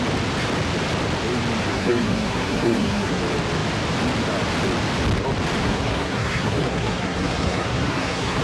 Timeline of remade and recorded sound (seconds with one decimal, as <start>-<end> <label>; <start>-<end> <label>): 0.0-1.7 recorded; 1.7-3.2 remade; 3.2-5.6 recorded; 5.6-8.4 remade